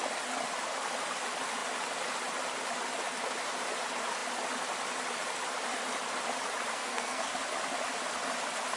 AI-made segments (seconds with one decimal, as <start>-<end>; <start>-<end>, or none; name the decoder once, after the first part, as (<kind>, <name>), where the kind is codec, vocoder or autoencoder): 6.7-7.3 (codec, SNAC)